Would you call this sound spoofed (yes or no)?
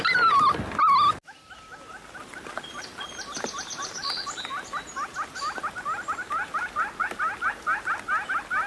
no